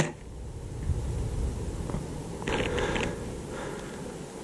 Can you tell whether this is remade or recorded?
recorded